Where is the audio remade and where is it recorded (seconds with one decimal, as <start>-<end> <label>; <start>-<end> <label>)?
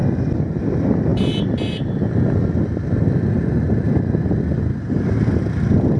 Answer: 0.0-6.0 recorded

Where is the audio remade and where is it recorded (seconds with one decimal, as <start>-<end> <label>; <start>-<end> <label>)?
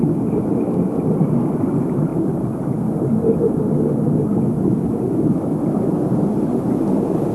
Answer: 0.0-7.3 recorded